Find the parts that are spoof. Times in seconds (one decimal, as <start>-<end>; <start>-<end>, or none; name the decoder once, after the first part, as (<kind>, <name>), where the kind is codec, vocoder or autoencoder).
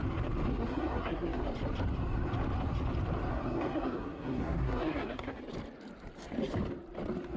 0.5-1.4 (codec, SNAC); 3.3-5.4